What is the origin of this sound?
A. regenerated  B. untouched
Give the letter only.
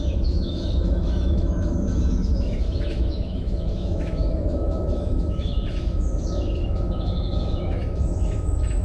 A